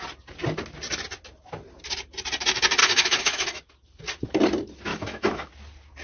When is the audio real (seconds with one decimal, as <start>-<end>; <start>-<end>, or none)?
0.0-2.8; 3.6-4.9; 5.5-6.0

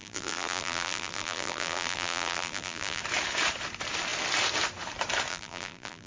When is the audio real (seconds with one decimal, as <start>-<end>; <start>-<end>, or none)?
3.0-5.3

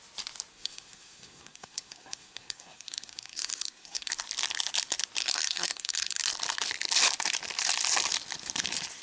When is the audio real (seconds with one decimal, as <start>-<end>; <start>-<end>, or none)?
0.0-0.5; 4.1-5.2; 6.2-9.0

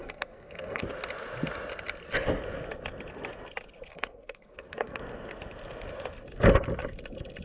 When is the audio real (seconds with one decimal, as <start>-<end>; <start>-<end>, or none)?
0.8-3.9; 5.0-7.4

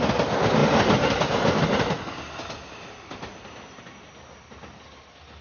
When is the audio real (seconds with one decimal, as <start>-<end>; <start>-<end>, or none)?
0.0-5.4

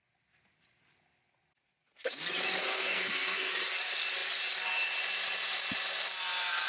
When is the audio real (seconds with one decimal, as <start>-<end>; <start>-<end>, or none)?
0.0-2.7; 3.5-6.7

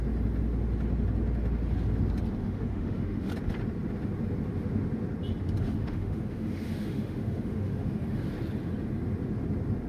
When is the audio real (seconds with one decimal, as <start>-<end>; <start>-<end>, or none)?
0.0-2.4; 3.3-5.6; 8.3-9.9